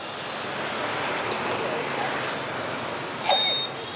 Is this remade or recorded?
recorded